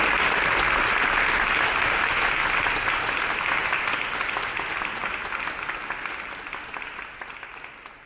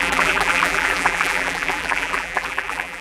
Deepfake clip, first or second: second